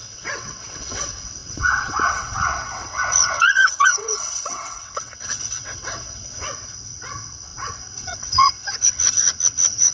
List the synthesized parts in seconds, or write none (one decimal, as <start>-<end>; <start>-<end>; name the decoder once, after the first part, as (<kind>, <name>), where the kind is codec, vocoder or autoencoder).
0.0-9.9 (vocoder, WaveNeXt)